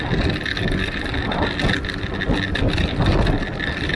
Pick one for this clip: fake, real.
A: real